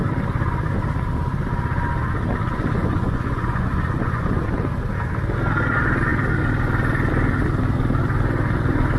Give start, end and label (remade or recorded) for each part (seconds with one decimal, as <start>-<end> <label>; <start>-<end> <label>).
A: 0.0-2.8 recorded; 2.8-4.5 remade; 4.5-9.0 recorded